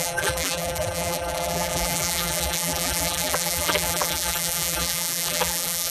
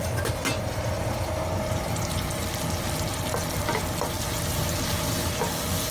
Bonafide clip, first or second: second